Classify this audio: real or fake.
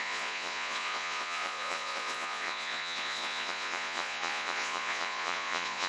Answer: fake